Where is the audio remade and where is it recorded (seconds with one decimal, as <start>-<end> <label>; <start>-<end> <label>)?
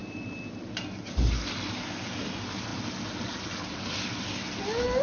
0.0-5.0 recorded